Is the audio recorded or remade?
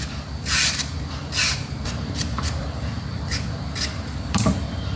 remade